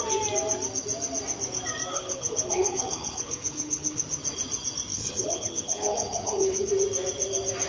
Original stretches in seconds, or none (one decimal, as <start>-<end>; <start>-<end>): 0.0-1.9; 4.0-4.9; 6.7-7.7